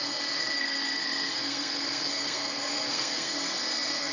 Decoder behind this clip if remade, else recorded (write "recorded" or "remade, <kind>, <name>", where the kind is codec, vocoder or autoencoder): remade, codec, SNAC